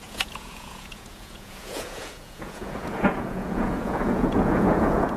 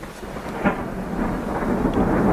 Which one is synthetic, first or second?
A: first